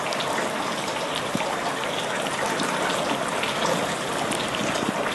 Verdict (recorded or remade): recorded